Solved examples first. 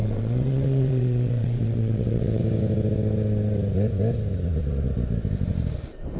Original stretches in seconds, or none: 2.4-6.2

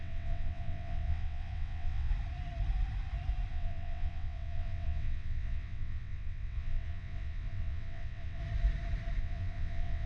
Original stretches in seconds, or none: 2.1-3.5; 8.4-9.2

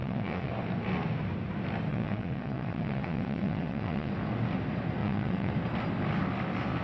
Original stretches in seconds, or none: 0.5-1.9; 4.1-5.0; 5.5-6.8

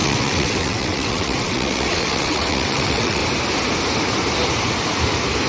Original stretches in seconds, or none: 3.2-5.5

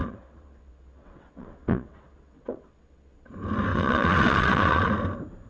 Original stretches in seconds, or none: 3.3-3.7; 4.9-5.5

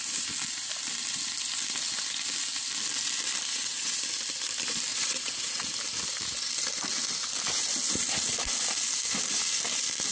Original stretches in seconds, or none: 0.0-3.5; 4.0-4.9; 5.7-10.1

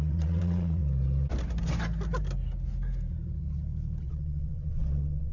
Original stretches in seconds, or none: 0.8-4.0

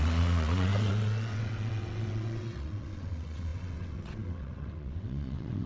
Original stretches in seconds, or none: none